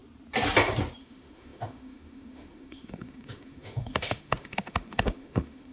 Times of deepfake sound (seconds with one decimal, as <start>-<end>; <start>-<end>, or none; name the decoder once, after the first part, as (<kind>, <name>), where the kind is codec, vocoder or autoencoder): 1.0-5.7 (autoencoder, DAC-VAE)